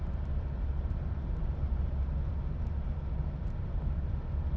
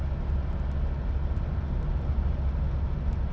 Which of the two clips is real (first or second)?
second